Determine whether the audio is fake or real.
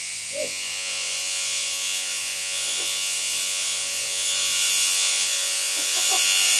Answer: fake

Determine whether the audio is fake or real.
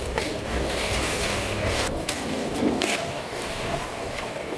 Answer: fake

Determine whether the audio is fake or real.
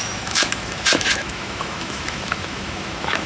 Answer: fake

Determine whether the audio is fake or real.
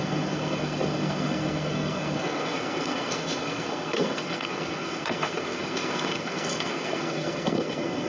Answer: fake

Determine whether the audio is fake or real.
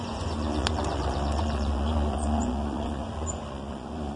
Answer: fake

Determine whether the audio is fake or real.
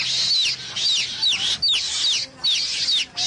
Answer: real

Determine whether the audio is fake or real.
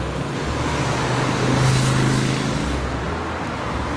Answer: real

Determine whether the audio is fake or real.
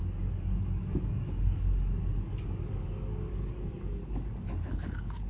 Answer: fake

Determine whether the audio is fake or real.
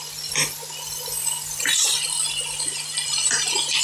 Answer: real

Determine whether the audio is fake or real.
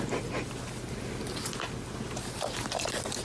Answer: real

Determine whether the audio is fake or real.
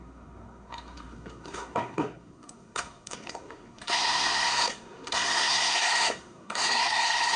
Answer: fake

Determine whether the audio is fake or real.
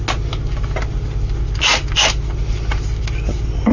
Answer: real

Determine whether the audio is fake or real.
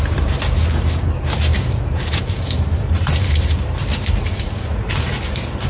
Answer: fake